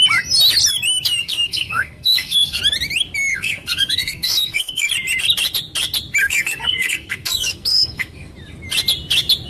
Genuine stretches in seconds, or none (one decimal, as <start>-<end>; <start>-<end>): 0.0-1.2; 2.6-3.3; 4.9-6.2; 8.3-9.5